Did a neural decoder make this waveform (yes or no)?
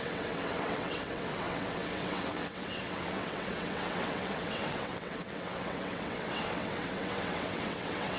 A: yes